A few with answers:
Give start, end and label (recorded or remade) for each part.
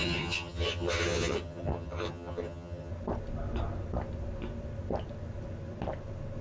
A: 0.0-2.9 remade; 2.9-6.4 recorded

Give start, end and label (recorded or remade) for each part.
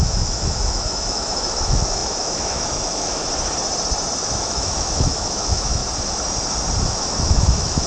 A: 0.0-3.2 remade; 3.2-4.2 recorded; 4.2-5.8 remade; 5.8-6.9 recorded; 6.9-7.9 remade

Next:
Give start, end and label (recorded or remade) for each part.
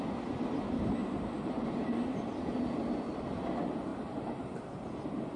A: 0.0-1.0 recorded; 1.0-2.5 remade; 2.5-3.9 recorded; 3.9-4.9 remade; 4.9-5.4 recorded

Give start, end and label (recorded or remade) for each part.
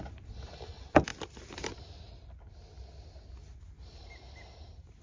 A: 0.0-5.0 recorded